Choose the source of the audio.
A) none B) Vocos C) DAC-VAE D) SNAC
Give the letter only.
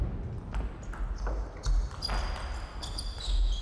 A